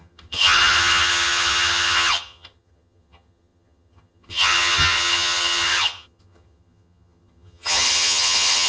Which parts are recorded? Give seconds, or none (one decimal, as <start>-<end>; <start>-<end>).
none